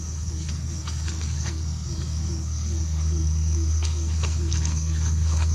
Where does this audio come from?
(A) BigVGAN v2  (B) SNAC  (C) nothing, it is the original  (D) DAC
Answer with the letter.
B